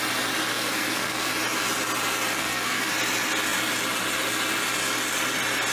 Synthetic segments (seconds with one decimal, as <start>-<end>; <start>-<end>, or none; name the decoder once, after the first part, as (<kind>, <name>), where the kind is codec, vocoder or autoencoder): 0.5-1.3 (codec, SNAC); 2.4-2.9